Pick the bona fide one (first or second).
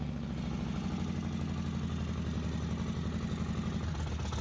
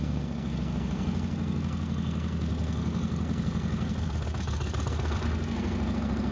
first